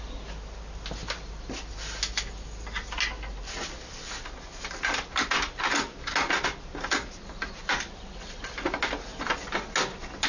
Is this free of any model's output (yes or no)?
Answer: yes